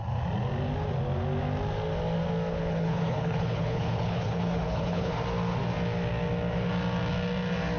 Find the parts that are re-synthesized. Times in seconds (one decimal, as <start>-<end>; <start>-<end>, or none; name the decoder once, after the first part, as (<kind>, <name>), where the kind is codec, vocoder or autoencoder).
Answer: 2.5-5.1 (codec, HILCodec)

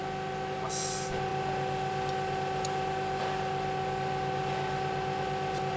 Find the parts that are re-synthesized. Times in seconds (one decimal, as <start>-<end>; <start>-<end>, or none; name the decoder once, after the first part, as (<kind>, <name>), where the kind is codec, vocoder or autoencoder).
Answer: none

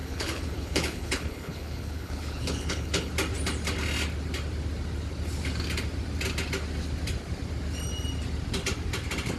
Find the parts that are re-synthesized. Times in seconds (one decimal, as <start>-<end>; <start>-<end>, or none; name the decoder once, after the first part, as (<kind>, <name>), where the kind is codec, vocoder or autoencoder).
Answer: 0.0-3.1 (codec, HILCodec)

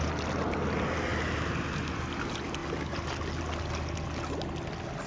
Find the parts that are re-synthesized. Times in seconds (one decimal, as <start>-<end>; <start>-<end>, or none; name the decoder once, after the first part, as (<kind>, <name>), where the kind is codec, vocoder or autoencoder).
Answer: none

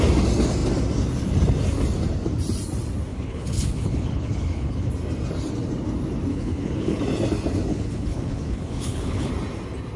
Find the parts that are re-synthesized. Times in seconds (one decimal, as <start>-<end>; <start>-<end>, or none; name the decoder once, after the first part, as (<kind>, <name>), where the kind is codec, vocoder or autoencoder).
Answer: 3.1-4.9 (codec, HILCodec); 6.3-7.0; 7.7-9.3